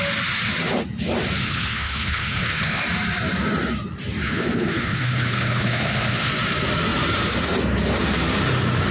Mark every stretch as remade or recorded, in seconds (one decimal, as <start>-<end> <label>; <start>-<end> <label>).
0.0-1.4 recorded; 1.4-2.8 remade; 2.8-4.2 recorded; 4.2-6.3 remade; 6.3-8.9 recorded